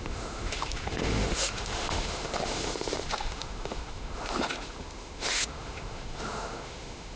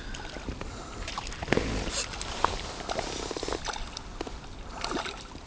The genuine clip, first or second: second